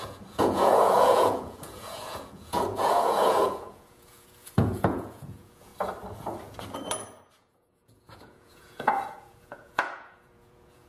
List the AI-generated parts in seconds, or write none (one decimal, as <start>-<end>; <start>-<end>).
0.0-5.7; 7.3-10.9